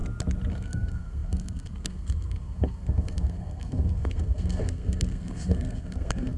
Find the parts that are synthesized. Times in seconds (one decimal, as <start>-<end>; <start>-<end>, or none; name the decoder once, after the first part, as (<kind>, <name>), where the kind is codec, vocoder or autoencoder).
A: 0.5-6.4 (codec, SNAC)